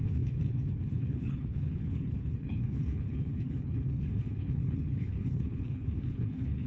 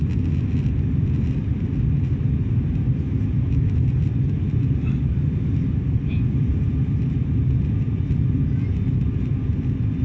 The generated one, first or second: first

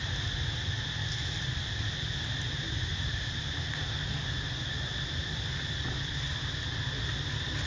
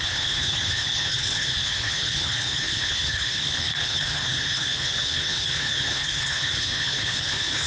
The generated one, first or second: second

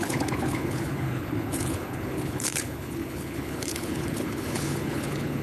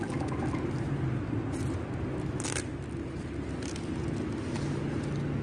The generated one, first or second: first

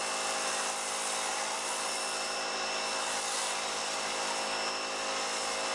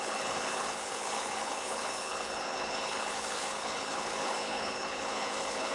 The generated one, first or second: second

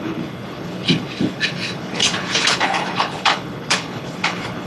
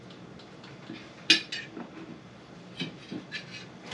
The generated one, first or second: first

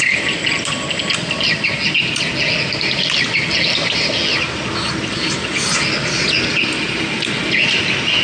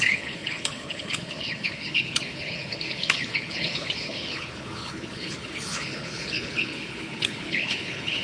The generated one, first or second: second